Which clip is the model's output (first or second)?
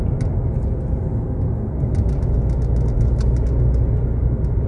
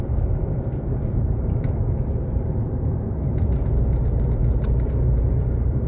second